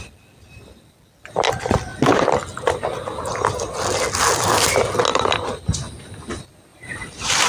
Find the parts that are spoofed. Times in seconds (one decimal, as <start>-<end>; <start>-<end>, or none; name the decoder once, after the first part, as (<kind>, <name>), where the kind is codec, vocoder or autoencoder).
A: 6.7-7.5 (vocoder, BigVGAN v2)